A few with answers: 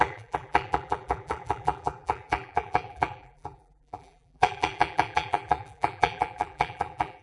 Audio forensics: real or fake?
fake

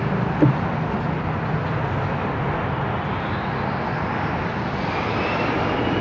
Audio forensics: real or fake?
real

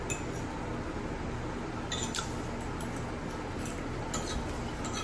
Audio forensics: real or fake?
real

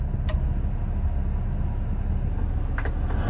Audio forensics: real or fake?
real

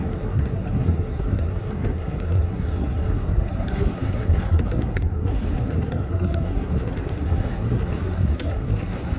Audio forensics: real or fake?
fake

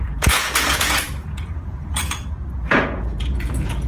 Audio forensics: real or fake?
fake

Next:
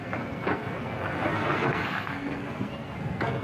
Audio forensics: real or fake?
fake